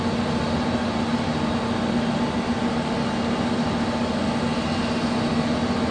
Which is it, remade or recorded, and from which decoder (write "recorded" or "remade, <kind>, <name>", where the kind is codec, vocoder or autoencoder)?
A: recorded